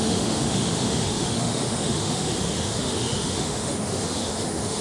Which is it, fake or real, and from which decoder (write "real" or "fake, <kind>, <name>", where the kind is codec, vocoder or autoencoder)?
fake, autoencoder, DAC-VAE